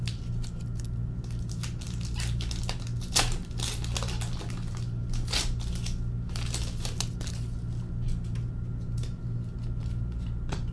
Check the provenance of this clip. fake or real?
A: real